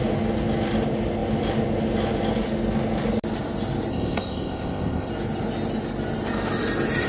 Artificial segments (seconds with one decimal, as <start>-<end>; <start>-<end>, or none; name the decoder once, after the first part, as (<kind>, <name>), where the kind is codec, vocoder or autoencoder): 3.9-5.1 (codec, ZipCodec)

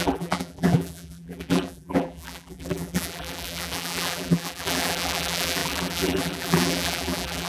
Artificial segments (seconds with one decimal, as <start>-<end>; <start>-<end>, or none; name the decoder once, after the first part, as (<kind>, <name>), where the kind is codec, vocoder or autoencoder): 0.0-7.5 (vocoder, BigVGAN v2)

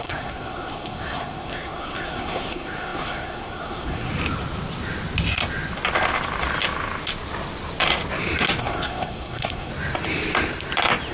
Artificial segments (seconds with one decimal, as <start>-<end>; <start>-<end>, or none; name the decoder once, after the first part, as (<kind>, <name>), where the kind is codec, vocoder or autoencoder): 0.0-4.1 (codec, SNAC); 8.6-9.7

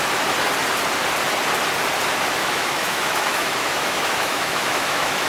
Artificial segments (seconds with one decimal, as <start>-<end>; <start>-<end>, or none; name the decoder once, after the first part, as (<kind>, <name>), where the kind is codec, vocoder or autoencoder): 2.4-5.3 (autoencoder, DAC-VAE)

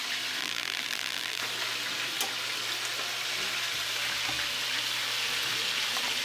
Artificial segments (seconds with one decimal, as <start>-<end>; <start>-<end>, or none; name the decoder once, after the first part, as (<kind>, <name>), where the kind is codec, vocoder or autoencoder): 0.4-1.4 (vocoder, BigVGAN v2)